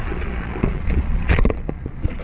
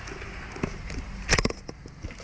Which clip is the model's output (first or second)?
first